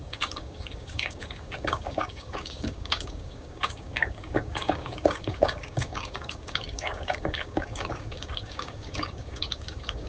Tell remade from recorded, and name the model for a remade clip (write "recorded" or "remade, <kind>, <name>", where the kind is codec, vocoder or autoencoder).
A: remade, codec, DAC